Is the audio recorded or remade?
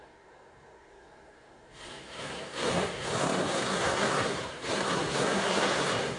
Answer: remade